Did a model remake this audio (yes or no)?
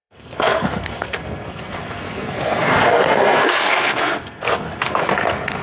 yes